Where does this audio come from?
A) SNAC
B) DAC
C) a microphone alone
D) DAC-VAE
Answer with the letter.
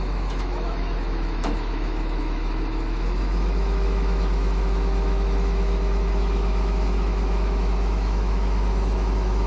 D